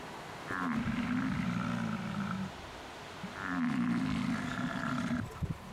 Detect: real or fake real